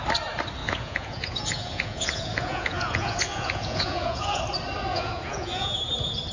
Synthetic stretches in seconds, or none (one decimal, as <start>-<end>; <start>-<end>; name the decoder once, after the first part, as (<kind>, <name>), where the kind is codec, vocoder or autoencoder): 0.6-4.4 (vocoder, Vocos); 4.9-5.7